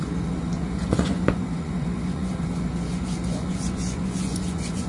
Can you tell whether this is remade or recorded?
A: remade